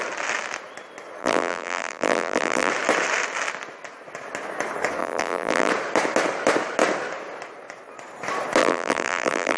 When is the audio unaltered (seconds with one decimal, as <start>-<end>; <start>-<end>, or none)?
0.0-1.2; 2.7-5.0; 5.7-8.6